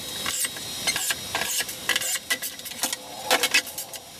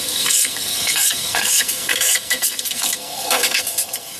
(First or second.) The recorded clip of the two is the first